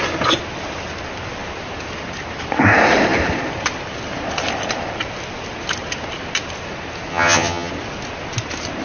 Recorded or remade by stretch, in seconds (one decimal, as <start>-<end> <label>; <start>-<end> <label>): 0.0-7.1 recorded; 7.1-7.7 remade; 7.7-8.8 recorded